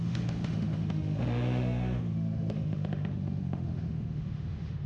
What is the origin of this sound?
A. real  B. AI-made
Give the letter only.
B